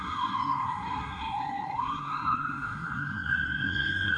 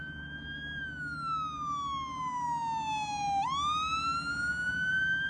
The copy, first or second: first